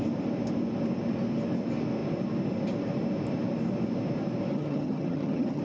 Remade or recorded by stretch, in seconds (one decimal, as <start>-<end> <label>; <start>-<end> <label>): 0.0-4.5 recorded; 4.5-5.6 remade